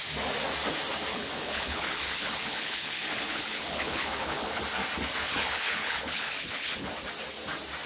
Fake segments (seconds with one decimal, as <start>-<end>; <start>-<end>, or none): 1.1-4.6; 5.1-6.9